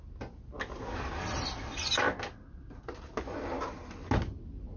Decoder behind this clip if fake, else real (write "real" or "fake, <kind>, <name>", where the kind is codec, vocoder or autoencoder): real